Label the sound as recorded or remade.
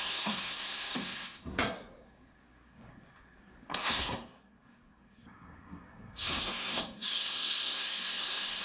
remade